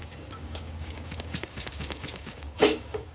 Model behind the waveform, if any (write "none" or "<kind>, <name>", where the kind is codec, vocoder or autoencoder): codec, DAC